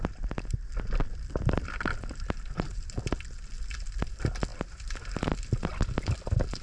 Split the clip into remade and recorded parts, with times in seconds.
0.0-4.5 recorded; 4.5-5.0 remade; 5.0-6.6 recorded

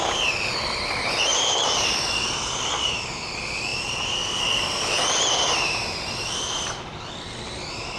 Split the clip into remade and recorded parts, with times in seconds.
0.0-1.3 recorded; 1.3-2.2 remade; 2.2-3.7 recorded; 3.7-5.5 remade; 5.5-8.0 recorded

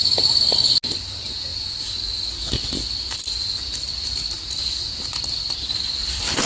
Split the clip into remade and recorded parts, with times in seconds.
0.0-6.5 recorded

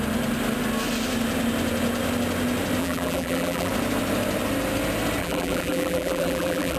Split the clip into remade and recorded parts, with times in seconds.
0.0-2.8 recorded; 2.8-3.7 remade; 3.7-5.2 recorded; 5.2-6.8 remade

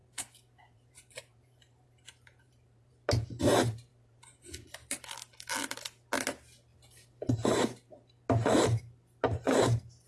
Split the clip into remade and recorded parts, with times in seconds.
0.0-2.9 remade; 2.9-3.9 recorded; 3.9-5.1 remade; 5.1-6.7 recorded; 6.7-7.3 remade; 7.3-10.1 recorded

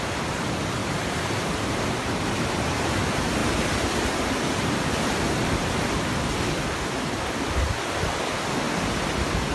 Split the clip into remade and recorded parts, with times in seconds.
0.0-0.8 recorded; 0.8-2.9 remade; 2.9-9.5 recorded

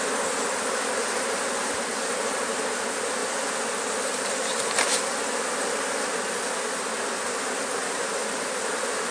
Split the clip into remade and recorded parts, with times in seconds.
0.0-1.0 recorded; 1.0-2.6 remade; 2.6-9.1 recorded